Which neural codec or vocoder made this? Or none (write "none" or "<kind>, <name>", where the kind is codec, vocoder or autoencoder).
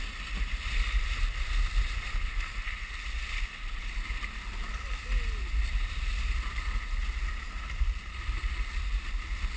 none